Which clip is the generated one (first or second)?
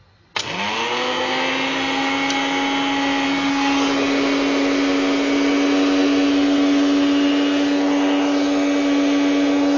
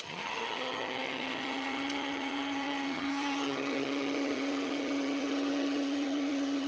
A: second